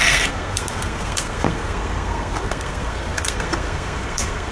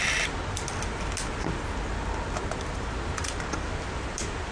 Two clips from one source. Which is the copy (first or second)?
first